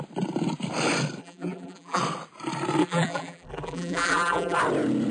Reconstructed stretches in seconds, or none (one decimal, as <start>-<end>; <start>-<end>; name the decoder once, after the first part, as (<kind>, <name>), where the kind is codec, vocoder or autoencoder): 1.2-2.0 (vocoder, BigVGAN v2); 2.8-4.6